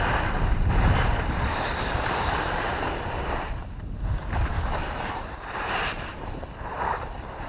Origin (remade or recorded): remade